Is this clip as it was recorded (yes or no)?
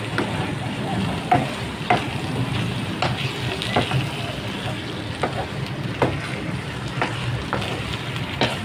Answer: yes